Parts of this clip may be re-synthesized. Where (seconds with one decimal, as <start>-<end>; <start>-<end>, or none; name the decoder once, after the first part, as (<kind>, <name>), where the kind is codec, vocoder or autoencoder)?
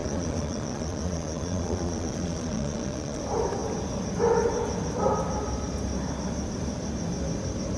0.0-3.2 (vocoder, Vocos)